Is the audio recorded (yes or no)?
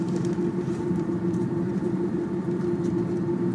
no